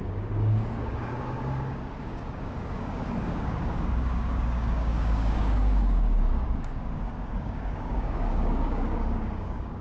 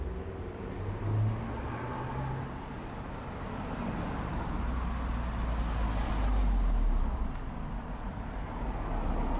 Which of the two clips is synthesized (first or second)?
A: first